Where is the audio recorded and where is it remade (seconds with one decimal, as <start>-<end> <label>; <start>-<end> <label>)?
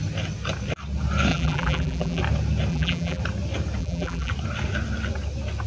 0.0-1.3 recorded; 1.3-2.2 remade; 2.2-2.7 recorded; 2.7-3.2 remade; 3.2-3.8 recorded; 3.8-4.3 remade; 4.3-5.7 recorded